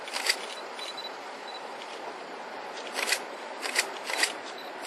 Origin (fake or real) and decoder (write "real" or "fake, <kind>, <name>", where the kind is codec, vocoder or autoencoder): fake, vocoder, BigVGAN v2